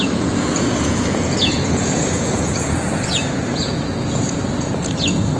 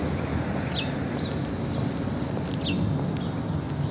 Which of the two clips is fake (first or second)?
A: first